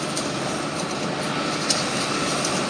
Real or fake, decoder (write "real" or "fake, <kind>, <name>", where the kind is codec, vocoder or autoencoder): real